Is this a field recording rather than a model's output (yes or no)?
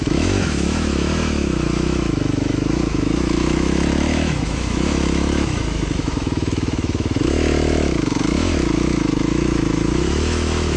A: no